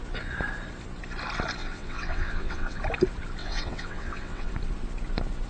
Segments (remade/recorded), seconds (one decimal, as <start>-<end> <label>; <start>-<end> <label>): 0.0-1.6 recorded; 1.6-2.8 remade; 2.8-3.4 recorded; 3.4-4.5 remade; 4.5-5.5 recorded